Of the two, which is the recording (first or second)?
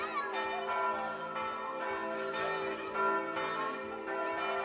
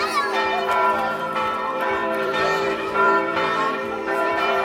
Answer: first